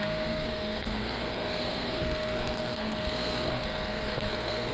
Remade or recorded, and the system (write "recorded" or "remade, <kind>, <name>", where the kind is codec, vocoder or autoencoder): remade, codec, SNAC